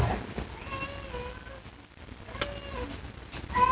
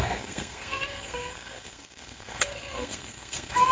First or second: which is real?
first